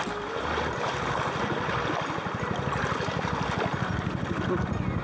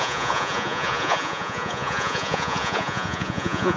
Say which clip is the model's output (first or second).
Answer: second